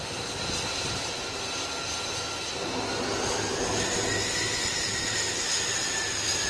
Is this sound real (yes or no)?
yes